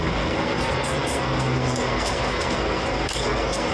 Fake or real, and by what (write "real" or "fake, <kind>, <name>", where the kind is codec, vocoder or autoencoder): fake, codec, SNAC